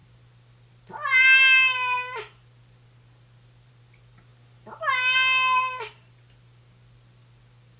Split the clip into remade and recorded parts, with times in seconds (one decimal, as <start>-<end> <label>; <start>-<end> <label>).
0.0-7.8 recorded